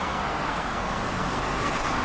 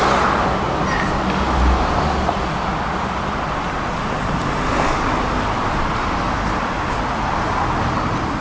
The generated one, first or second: first